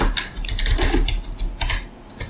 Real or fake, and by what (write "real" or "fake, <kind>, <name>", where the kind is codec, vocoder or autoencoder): real